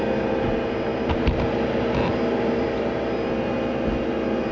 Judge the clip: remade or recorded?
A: recorded